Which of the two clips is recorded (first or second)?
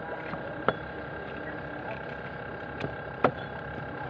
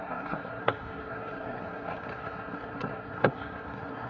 first